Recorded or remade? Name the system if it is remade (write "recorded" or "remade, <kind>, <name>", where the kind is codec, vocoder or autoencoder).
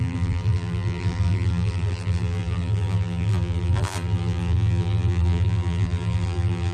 remade, vocoder, BigVGAN v2